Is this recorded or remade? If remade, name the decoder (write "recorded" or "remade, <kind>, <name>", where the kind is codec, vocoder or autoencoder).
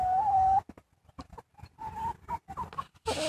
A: recorded